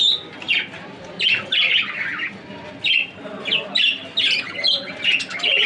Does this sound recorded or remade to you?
recorded